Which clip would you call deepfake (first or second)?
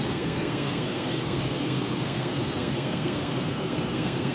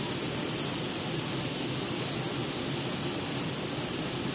first